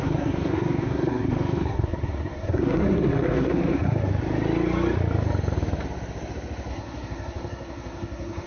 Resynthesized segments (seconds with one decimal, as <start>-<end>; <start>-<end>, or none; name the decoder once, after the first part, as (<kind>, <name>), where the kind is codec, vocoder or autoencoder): 0.0-4.1 (codec, SNAC); 6.7-8.5